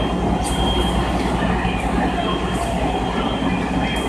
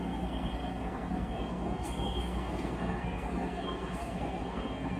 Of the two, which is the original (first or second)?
first